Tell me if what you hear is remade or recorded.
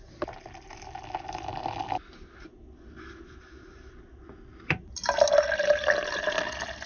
recorded